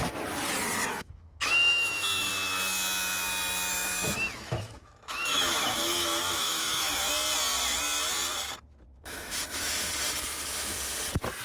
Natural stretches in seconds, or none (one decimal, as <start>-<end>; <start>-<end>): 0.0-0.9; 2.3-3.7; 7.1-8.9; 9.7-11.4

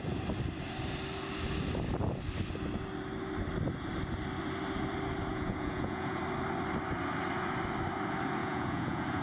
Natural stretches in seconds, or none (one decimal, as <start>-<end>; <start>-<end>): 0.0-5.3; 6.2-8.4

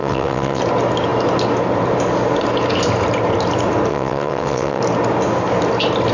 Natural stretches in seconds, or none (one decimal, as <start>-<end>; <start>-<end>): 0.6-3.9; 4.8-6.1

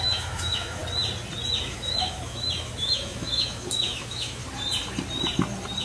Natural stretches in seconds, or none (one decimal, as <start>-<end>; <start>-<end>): 0.8-1.6; 4.4-5.8

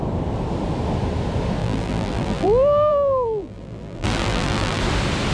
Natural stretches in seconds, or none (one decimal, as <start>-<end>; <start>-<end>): 0.0-1.6; 4.8-5.3

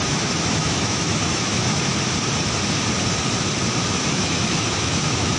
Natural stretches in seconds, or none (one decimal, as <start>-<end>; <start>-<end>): 1.9-4.1

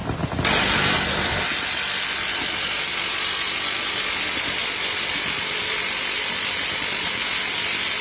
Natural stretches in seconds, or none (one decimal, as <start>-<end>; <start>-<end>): 0.0-8.0